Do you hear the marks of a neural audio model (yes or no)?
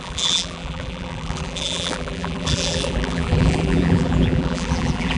yes